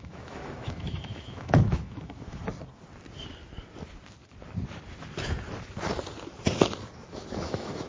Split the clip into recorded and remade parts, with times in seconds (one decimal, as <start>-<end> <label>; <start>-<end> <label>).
0.0-2.4 remade; 2.4-7.1 recorded; 7.1-7.9 remade